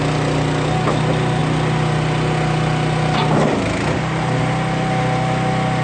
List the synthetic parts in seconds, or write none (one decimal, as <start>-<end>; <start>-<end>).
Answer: none